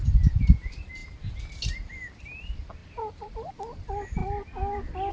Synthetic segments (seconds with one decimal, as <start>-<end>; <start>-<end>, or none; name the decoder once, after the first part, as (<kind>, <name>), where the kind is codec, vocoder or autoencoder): 2.8-3.5 (vocoder, BigVGAN v2)